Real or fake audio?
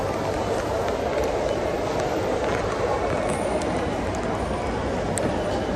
real